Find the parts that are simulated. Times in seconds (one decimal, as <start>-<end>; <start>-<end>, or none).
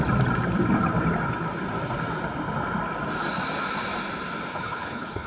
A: 4.5-5.3